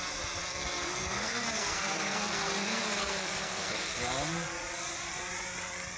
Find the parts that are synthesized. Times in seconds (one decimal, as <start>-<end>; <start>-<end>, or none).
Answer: 0.4-4.0